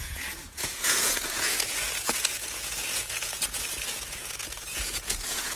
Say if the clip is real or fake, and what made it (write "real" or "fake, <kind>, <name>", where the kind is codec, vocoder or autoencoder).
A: fake, vocoder, Vocos